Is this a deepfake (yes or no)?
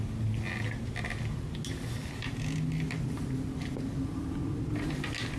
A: no